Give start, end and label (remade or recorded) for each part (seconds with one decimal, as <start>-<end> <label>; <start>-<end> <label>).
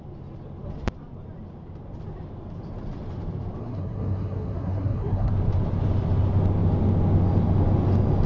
0.0-3.6 recorded; 3.6-5.3 remade; 5.3-8.3 recorded